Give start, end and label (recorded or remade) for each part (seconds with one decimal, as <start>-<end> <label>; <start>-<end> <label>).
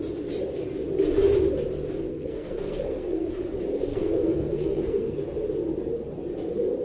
0.0-2.1 recorded; 2.1-3.3 remade; 3.3-3.9 recorded; 3.9-5.2 remade; 5.2-6.8 recorded